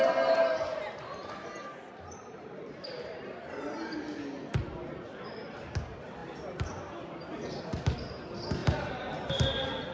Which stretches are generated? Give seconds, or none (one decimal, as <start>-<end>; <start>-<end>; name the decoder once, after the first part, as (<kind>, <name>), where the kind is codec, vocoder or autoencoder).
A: 1.2-3.7 (vocoder, BigVGAN v2); 8.6-9.3